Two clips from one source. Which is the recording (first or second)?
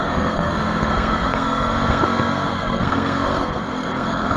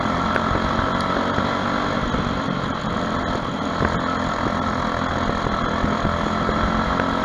second